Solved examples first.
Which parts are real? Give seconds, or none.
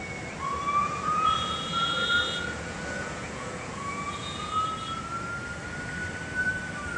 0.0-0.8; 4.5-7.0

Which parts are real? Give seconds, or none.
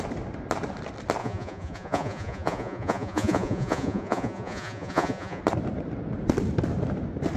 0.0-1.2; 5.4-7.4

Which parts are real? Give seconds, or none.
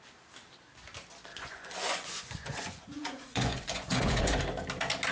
0.0-1.3; 4.4-5.1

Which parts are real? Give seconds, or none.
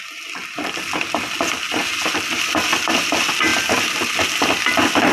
0.0-5.1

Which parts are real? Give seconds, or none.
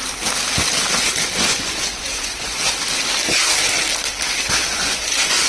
0.0-1.5; 2.6-4.6